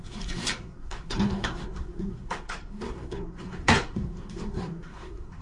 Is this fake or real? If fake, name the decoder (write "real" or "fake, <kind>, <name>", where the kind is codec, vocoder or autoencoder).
fake, codec, SNAC